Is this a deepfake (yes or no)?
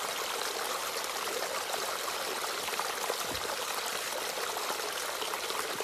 yes